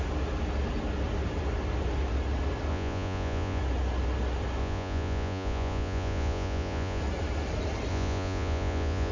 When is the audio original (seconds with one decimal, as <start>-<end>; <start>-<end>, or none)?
0.0-2.7; 3.6-4.6; 7.0-7.9